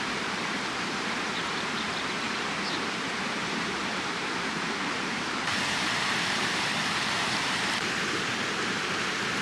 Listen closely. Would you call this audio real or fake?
fake